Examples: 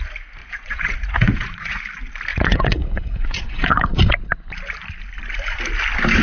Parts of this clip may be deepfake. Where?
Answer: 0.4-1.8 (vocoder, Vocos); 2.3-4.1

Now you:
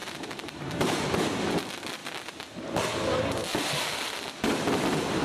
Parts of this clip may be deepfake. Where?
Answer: 0.0-1.0 (vocoder, BigVGAN v2)